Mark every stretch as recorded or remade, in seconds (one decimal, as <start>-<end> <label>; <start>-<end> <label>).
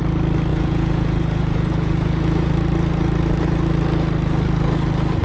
0.0-0.5 recorded; 0.5-2.5 remade; 2.5-5.2 recorded